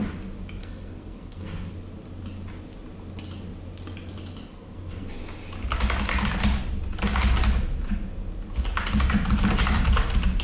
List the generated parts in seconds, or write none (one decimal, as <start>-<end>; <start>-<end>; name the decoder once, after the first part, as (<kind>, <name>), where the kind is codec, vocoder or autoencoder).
0.6-1.7 (codec, SNAC); 4.5-5.2